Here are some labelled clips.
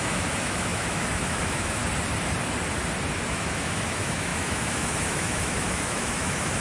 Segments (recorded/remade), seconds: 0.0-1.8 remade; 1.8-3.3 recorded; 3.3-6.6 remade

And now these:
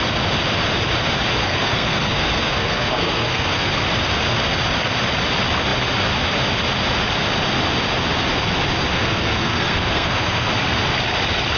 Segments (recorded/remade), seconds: 0.0-1.4 recorded; 1.4-3.7 remade; 3.7-8.9 recorded; 8.9-10.5 remade; 10.5-11.6 recorded